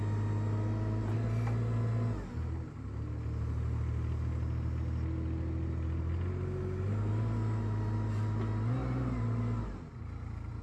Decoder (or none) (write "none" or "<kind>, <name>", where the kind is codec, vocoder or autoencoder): none